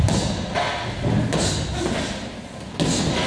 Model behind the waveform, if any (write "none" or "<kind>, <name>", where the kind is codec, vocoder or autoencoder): none